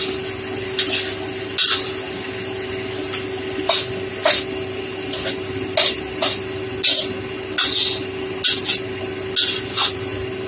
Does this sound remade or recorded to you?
recorded